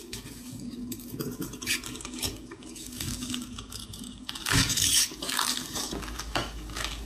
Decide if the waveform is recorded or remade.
remade